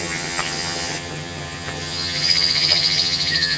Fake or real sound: fake